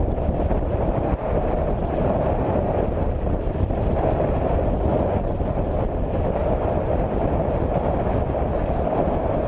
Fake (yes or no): no